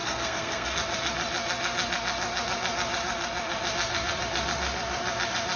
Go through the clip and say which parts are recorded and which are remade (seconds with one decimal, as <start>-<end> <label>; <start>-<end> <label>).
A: 0.0-0.7 remade; 0.7-5.6 recorded